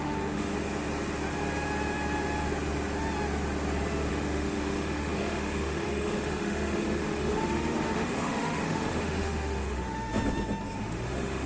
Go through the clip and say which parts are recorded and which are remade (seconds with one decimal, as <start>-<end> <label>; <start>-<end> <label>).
0.0-0.5 remade; 0.5-4.1 recorded; 4.1-10.1 remade; 10.1-10.8 recorded; 10.8-11.5 remade